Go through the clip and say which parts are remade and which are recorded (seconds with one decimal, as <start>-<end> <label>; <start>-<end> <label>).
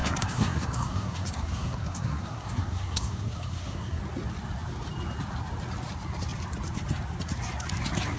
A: 0.0-4.0 remade; 4.0-8.2 recorded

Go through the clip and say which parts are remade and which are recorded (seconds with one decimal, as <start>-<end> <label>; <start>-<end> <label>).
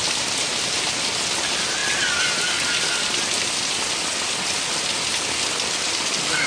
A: 0.0-6.5 recorded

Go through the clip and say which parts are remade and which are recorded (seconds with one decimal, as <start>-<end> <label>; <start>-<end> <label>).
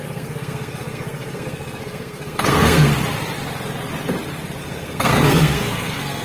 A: 0.0-2.9 remade; 2.9-4.6 recorded; 4.6-6.2 remade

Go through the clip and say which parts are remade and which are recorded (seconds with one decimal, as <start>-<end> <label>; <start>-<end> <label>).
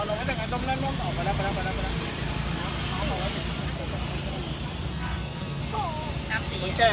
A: 0.0-4.9 recorded; 4.9-5.6 remade; 5.6-6.9 recorded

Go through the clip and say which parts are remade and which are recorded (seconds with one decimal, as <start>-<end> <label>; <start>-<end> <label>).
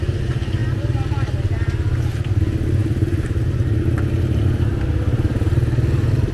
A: 0.0-6.3 recorded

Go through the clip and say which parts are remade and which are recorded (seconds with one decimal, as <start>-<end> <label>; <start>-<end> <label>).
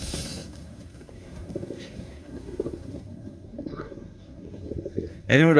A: 0.0-5.6 remade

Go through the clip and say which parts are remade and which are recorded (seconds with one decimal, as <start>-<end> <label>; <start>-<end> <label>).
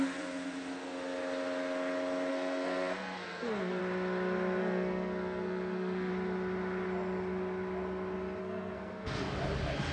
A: 0.0-2.3 recorded; 2.3-3.8 remade; 3.8-4.6 recorded; 4.6-6.1 remade; 6.1-8.4 recorded; 8.4-9.2 remade; 9.2-9.9 recorded